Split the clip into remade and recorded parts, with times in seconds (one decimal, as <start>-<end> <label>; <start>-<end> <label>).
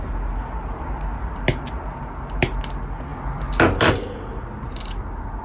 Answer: 0.0-5.4 recorded